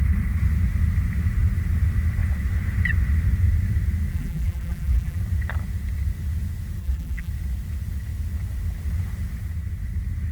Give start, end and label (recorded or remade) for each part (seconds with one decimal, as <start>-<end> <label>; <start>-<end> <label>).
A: 0.0-4.1 recorded; 4.1-5.2 remade; 5.2-6.8 recorded; 6.8-7.3 remade; 7.3-10.3 recorded